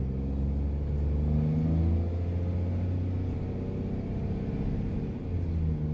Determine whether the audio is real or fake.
real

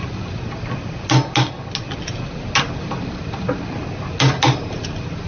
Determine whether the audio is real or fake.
real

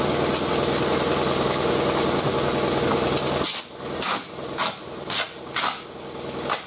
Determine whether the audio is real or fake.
real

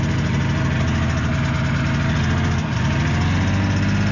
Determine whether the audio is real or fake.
real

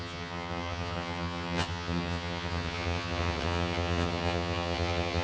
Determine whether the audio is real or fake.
fake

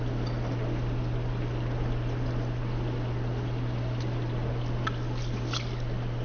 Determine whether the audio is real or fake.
real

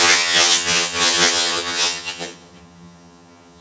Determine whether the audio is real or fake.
fake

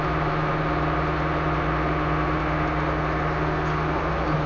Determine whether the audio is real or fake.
real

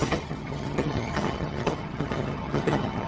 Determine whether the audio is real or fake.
fake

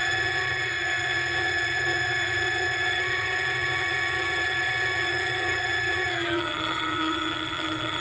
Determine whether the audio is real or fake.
fake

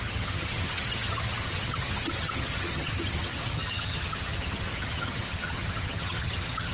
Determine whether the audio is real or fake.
fake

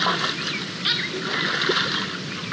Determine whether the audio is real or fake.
real